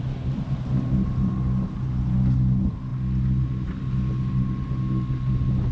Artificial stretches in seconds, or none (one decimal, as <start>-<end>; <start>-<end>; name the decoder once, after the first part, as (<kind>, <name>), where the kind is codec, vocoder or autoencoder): none